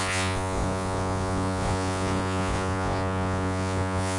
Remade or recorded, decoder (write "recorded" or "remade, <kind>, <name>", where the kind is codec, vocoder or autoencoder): remade, vocoder, Vocos